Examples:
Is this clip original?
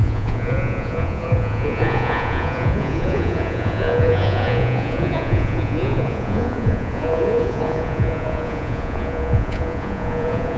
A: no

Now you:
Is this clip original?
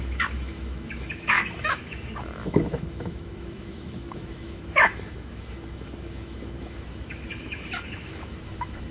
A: no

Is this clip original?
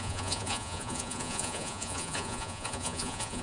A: no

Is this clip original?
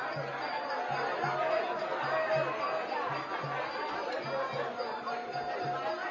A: yes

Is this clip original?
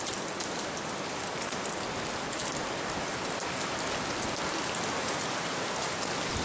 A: yes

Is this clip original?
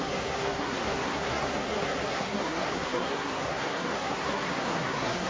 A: no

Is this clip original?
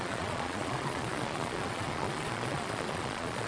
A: no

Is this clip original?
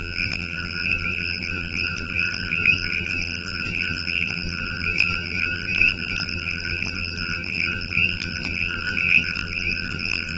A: no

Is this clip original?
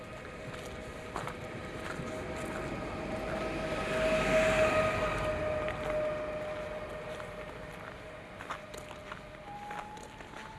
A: yes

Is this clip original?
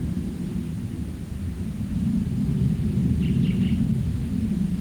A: yes